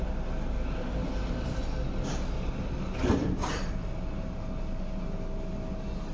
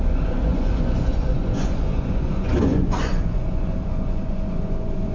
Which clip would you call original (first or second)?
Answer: first